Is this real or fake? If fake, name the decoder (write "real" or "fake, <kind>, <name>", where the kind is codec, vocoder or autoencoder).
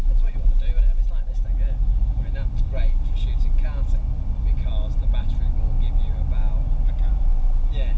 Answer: real